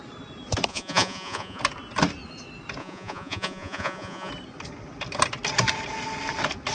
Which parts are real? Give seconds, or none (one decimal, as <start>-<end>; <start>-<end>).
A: 0.0-0.7; 1.6-2.8; 4.3-6.7